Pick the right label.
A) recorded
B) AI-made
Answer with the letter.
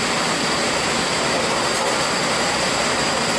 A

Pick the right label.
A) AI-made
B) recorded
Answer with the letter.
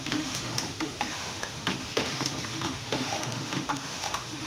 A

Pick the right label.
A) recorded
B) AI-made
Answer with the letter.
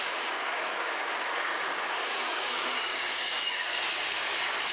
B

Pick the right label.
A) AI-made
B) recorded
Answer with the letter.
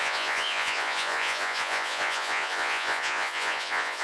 A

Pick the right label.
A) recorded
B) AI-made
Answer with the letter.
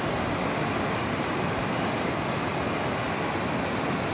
A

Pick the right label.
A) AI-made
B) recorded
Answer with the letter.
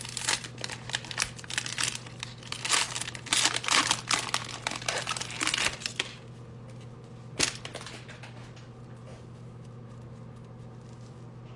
B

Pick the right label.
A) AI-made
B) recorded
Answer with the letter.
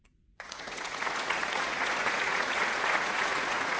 A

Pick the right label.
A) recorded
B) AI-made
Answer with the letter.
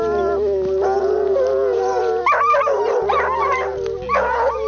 A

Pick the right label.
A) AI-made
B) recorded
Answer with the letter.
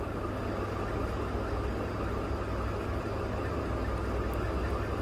B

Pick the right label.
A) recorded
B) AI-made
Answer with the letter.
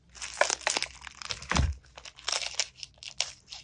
A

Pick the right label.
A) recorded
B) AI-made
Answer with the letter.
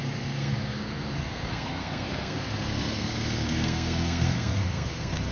B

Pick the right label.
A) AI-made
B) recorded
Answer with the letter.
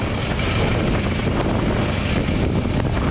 B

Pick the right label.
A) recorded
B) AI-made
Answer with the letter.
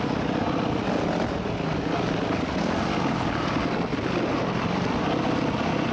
A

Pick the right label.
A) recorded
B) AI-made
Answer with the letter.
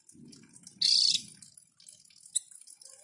A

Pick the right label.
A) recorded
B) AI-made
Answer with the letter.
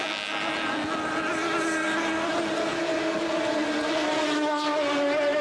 A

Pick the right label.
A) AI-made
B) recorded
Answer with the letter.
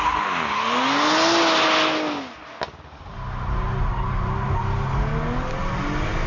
B